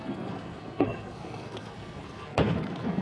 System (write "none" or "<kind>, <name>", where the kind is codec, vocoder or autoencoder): codec, SNAC